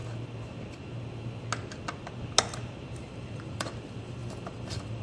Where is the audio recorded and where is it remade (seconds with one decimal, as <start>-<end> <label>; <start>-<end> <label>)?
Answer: 0.0-3.0 recorded; 3.0-5.0 remade